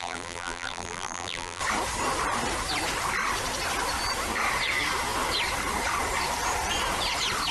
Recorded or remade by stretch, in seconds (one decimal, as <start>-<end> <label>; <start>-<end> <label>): 0.0-1.6 remade; 1.6-7.5 recorded